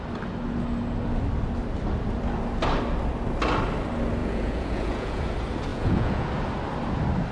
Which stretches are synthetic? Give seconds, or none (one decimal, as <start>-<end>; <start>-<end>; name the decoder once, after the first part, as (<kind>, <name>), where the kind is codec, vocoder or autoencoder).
4.2-5.2 (vocoder, Vocos); 5.7-6.3